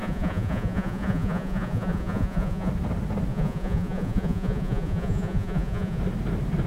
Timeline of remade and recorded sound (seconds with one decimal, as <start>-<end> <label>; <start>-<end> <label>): 0.0-2.7 remade; 2.7-3.3 recorded; 3.3-6.0 remade; 6.0-6.7 recorded